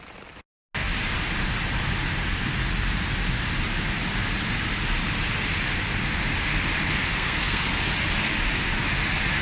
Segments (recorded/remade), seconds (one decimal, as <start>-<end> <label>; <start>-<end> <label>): 0.0-7.1 recorded; 7.1-7.6 remade; 7.6-9.4 recorded